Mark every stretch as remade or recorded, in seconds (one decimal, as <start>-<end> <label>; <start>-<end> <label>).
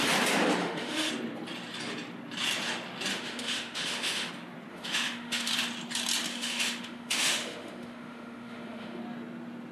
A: 0.0-0.6 recorded; 0.6-1.1 remade; 1.1-3.1 recorded; 3.1-4.3 remade; 4.3-4.7 recorded; 4.7-5.5 remade; 5.5-6.3 recorded; 6.3-9.0 remade; 9.0-9.7 recorded